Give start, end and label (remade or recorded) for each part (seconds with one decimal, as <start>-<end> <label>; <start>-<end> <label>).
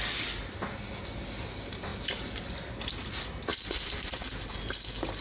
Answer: 0.0-3.5 recorded; 3.5-4.3 remade; 4.3-5.2 recorded